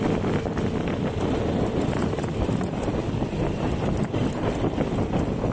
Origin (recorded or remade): recorded